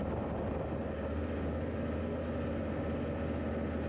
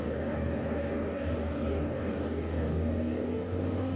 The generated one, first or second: second